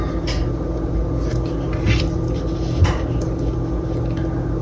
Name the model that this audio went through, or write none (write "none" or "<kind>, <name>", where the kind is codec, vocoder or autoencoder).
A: none